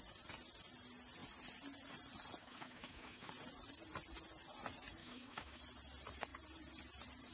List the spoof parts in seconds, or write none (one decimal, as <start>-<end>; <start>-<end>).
2.4-3.3; 5.0-5.6